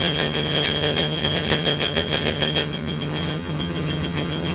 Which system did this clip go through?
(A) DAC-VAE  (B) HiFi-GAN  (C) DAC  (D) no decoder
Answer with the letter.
B